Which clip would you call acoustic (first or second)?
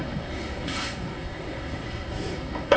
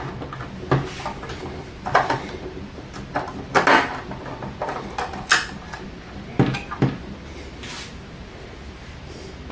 second